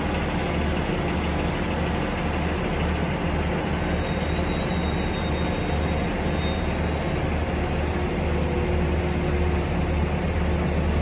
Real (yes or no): yes